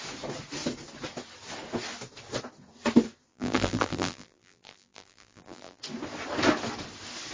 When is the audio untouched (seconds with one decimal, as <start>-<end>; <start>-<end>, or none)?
0.0-3.3; 5.8-7.3